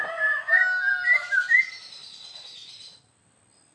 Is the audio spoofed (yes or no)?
no